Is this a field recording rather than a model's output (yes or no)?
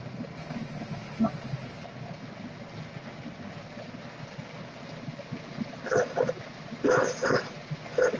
yes